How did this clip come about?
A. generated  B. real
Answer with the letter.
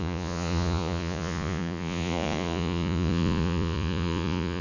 A